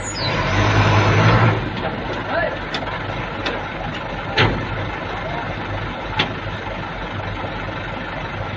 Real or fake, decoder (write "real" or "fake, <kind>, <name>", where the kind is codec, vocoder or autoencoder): real